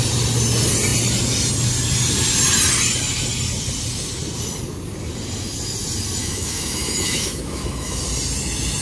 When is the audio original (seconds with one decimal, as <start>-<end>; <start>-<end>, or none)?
0.0-6.2; 8.0-8.8